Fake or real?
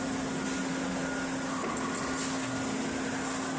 real